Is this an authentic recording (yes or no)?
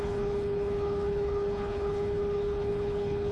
no